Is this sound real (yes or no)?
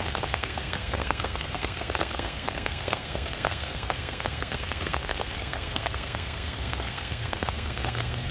no